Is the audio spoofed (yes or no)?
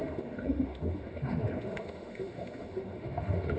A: yes